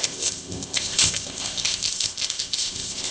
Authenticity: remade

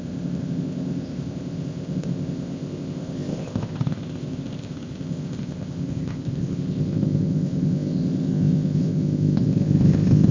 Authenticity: remade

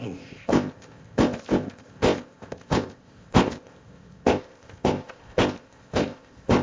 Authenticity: remade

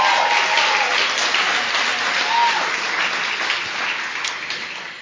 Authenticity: recorded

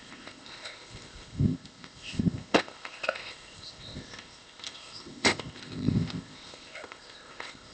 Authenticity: remade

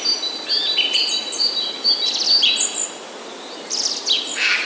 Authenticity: recorded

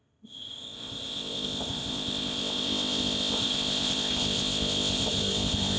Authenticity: remade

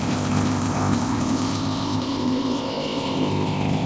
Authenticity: remade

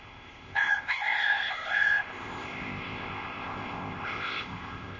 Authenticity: remade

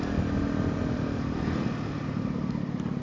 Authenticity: recorded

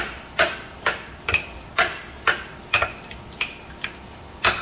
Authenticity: recorded